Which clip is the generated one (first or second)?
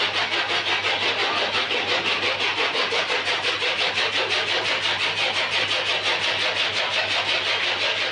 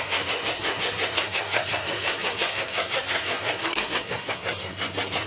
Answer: second